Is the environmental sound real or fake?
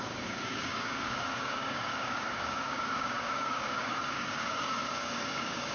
fake